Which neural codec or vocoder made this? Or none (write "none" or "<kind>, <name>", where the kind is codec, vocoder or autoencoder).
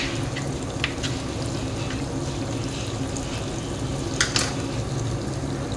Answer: none